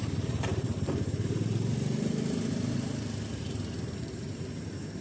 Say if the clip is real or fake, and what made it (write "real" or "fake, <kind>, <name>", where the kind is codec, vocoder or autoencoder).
fake, vocoder, BigVGAN v2